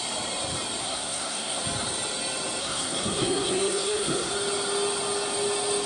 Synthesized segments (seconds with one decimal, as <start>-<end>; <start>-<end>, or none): 0.8-1.6; 2.6-4.3